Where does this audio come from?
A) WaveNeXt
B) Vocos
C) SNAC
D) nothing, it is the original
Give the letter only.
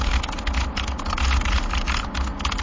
D